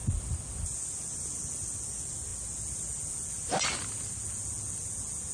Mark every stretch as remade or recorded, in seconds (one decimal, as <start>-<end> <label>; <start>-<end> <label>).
0.0-5.3 recorded